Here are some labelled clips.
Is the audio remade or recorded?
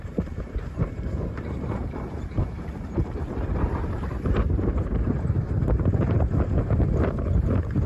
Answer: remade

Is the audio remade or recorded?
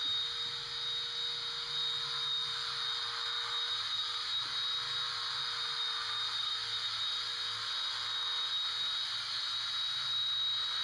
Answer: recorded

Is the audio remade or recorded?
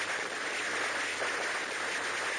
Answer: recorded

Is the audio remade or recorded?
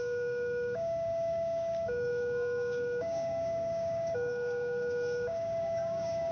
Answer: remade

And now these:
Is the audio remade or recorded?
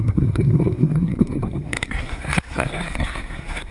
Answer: remade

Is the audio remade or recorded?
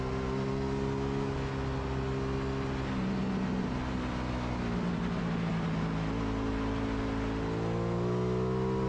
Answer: recorded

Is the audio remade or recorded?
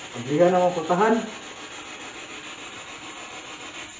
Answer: recorded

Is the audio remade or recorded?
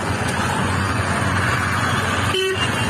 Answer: remade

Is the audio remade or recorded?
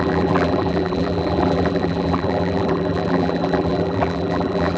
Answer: remade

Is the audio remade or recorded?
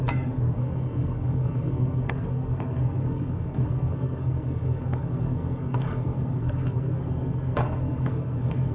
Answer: remade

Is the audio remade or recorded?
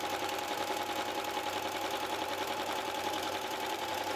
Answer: remade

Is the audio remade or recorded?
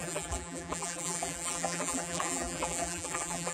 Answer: remade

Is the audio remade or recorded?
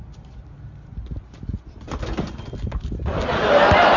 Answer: recorded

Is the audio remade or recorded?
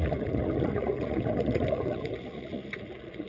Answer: remade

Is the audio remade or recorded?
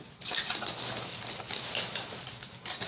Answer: recorded